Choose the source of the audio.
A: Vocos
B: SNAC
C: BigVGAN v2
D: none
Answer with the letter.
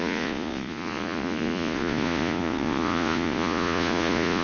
A